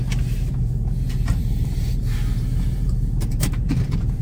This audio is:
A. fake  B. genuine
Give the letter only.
A